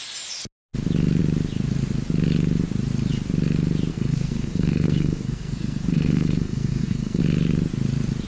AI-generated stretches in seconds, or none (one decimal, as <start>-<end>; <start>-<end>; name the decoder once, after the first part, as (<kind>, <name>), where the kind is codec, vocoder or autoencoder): 3.9-7.2 (codec, SNAC)